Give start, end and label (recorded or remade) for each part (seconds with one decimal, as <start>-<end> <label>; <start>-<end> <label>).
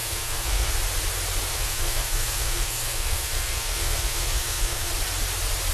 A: 0.0-0.7 remade; 0.7-1.5 recorded; 1.5-4.9 remade; 4.9-5.7 recorded